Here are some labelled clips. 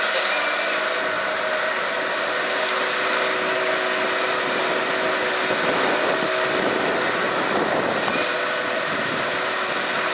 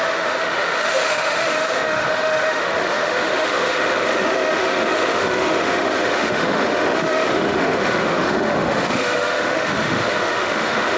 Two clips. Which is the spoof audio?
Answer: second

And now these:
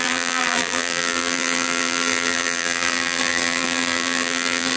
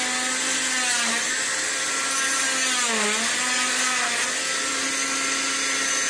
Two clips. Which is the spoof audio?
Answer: first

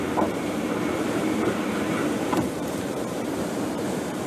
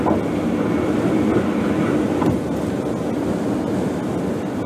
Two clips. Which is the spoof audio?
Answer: first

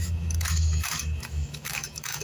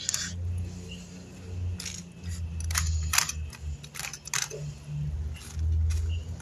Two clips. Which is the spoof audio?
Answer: first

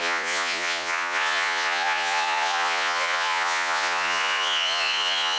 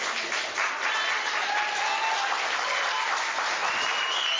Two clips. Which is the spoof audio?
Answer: first